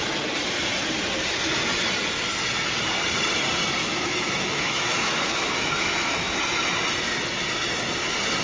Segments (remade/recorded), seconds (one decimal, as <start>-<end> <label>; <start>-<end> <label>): 0.0-3.8 recorded; 3.8-6.4 remade; 6.4-8.4 recorded